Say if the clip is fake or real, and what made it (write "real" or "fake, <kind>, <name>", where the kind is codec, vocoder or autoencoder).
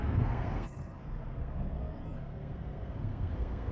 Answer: fake, codec, SNAC